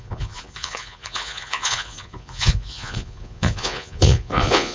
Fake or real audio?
fake